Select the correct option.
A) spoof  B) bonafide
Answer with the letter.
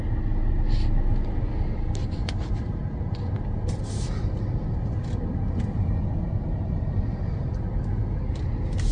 B